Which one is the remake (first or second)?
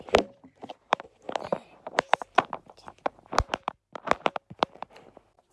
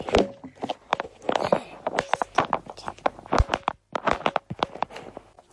first